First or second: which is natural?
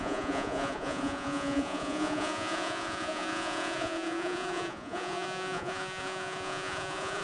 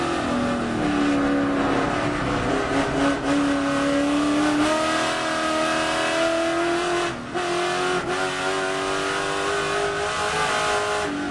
second